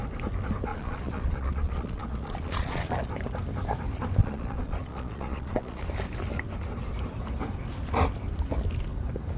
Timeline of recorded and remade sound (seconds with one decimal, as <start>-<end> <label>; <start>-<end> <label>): 0.0-0.7 recorded; 0.7-3.1 remade; 3.1-4.2 recorded; 4.2-5.8 remade; 5.8-9.4 recorded